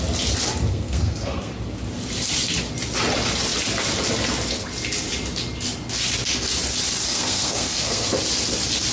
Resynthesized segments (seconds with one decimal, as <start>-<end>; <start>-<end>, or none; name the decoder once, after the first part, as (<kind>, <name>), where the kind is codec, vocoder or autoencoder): 0.7-1.5 (codec, SNAC); 7.1-8.1